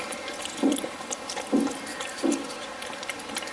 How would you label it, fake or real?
real